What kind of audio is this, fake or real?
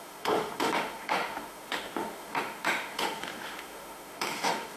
fake